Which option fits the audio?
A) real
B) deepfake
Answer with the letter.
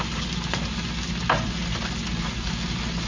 A